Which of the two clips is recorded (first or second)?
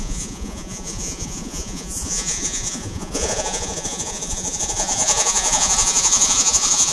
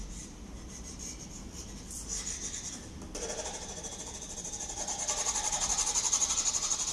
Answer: second